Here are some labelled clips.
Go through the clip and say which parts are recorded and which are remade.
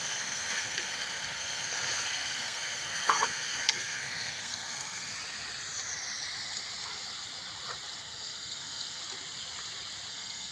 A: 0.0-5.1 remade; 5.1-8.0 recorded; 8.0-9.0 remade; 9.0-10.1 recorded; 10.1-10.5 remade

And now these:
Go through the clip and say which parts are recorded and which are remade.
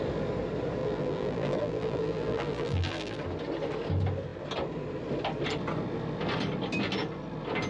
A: 0.0-0.8 recorded; 0.8-3.2 remade; 3.2-7.7 recorded